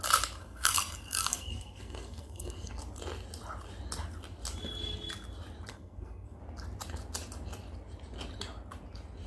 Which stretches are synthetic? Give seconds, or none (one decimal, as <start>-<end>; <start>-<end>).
0.4-2.8; 5.7-6.4